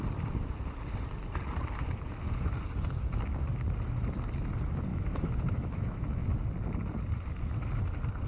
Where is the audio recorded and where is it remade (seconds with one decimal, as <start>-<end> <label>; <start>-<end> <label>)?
0.0-4.9 recorded; 4.9-6.2 remade; 6.2-8.3 recorded